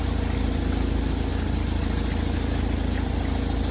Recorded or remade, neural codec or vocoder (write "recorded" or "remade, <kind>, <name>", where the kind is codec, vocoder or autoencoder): recorded